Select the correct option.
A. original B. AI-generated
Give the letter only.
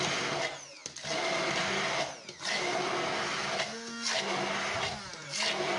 A